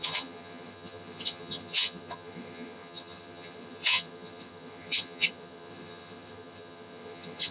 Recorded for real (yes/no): no